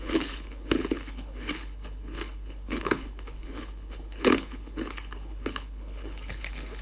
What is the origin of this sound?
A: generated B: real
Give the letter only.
A